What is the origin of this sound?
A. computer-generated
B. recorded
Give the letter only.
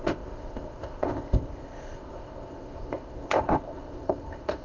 A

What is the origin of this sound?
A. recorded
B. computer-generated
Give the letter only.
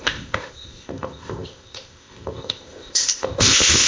B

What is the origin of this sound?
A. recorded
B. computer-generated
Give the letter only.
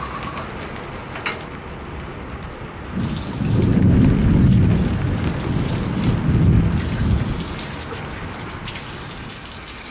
A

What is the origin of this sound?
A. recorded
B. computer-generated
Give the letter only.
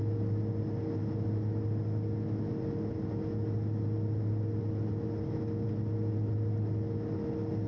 A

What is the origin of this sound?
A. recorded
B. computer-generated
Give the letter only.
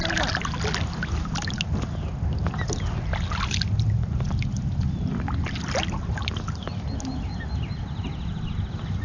A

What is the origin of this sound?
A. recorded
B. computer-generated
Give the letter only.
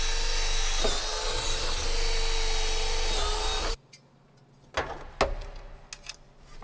A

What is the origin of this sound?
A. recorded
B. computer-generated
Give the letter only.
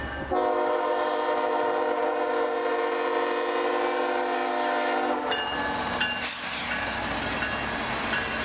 A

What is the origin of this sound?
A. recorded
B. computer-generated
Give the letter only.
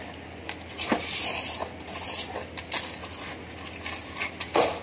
A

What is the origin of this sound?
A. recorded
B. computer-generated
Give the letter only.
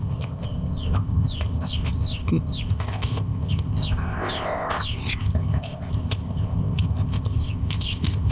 B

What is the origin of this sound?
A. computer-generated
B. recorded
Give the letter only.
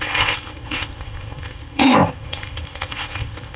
A